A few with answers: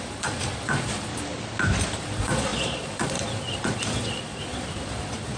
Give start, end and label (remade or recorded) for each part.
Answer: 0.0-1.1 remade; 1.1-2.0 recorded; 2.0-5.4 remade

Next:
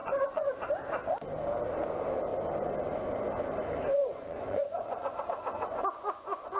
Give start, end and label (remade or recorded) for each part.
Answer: 0.0-0.5 remade; 0.5-3.9 recorded; 3.9-5.2 remade; 5.2-5.7 recorded; 5.7-6.6 remade

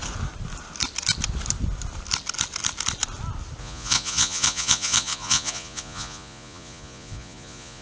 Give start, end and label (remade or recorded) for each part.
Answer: 0.0-3.6 recorded; 3.6-7.8 remade

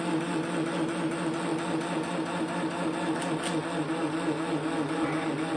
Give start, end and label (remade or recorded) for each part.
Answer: 0.0-5.6 recorded

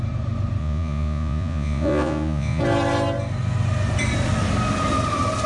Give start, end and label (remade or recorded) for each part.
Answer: 0.0-0.6 recorded; 0.6-2.6 remade; 2.6-5.5 recorded

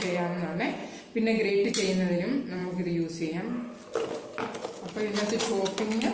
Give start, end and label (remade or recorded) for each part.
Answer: 0.0-6.1 recorded